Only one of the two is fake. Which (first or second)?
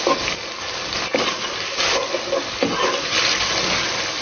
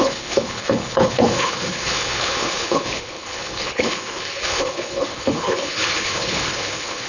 second